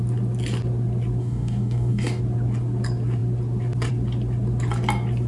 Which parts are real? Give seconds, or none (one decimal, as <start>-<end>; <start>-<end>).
0.0-1.2; 2.2-5.3